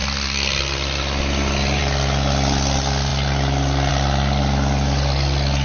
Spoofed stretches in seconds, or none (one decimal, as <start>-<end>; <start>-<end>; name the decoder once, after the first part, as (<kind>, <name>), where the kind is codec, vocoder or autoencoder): none